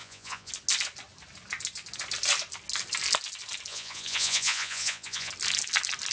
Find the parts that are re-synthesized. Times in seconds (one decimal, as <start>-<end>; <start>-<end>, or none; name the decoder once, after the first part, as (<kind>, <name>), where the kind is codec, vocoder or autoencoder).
0.0-0.5 (vocoder, Vocos); 3.7-5.3